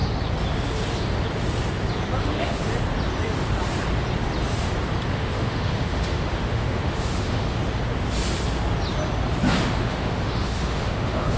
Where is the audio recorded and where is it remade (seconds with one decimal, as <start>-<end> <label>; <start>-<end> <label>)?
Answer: 0.0-2.2 recorded; 2.2-2.7 remade; 2.7-5.1 recorded; 5.1-7.6 remade; 7.6-9.8 recorded; 9.8-11.4 remade